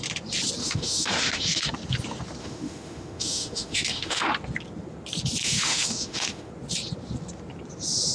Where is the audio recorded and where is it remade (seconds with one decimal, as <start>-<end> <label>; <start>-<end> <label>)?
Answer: 0.0-0.6 recorded; 0.6-1.7 remade; 1.7-2.4 recorded; 2.4-4.3 remade; 4.3-5.4 recorded; 5.4-6.5 remade; 6.5-8.1 recorded